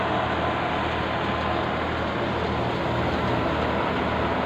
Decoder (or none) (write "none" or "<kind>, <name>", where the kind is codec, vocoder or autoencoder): none